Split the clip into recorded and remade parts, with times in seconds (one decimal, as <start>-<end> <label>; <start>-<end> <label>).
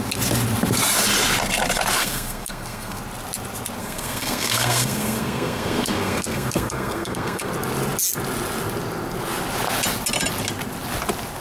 0.0-2.0 recorded; 2.0-3.0 remade; 3.0-3.8 recorded; 3.8-7.5 remade; 7.5-11.4 recorded